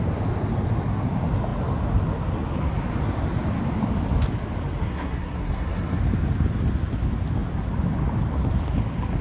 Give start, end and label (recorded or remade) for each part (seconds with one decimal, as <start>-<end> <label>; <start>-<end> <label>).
0.0-4.8 recorded; 4.8-6.0 remade; 6.0-9.2 recorded